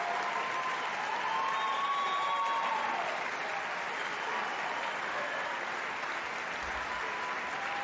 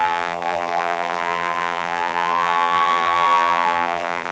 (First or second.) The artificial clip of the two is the second